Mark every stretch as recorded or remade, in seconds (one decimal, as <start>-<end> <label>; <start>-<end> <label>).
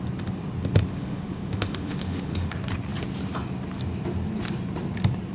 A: 0.0-0.9 recorded; 0.9-2.5 remade; 2.5-5.3 recorded